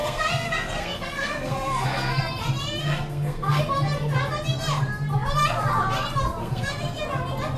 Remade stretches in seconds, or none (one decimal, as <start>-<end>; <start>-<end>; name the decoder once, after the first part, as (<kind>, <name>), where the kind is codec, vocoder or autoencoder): 0.0-2.2 (codec, SNAC); 2.8-3.6; 6.4-7.0